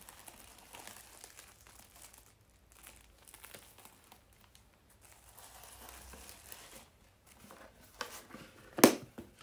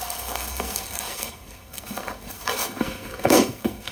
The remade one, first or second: second